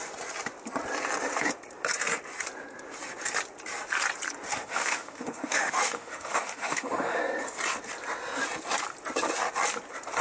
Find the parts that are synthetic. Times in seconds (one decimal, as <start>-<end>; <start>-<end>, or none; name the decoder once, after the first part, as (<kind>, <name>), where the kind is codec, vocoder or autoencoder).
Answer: 4.5-7.2 (autoencoder, DAC-VAE)